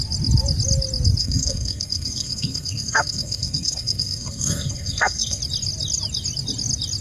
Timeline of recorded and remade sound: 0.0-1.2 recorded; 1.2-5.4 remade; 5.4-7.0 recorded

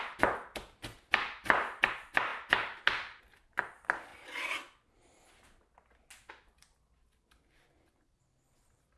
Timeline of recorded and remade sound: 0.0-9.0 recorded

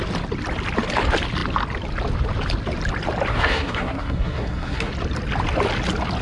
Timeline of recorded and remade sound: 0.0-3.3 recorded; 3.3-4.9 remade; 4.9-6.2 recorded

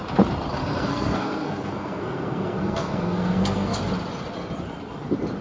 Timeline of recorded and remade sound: 0.0-0.6 recorded; 0.6-3.8 remade; 3.8-5.4 recorded

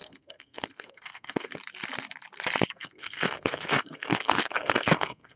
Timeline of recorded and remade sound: 0.0-1.5 remade; 1.5-2.7 recorded; 2.7-5.4 remade

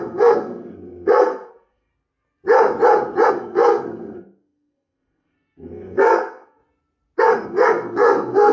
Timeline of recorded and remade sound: 0.0-1.9 remade; 1.9-3.3 recorded; 3.3-6.6 remade; 6.6-7.2 recorded; 7.2-8.5 remade

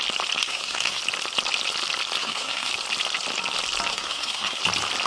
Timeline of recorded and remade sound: 0.0-0.4 recorded; 0.4-1.0 remade; 1.0-2.2 recorded; 2.2-2.7 remade; 2.7-3.9 recorded; 3.9-4.6 remade; 4.6-5.1 recorded